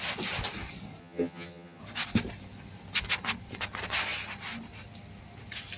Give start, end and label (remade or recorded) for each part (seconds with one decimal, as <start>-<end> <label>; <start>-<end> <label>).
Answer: 0.0-1.0 recorded; 1.0-1.8 remade; 1.8-5.8 recorded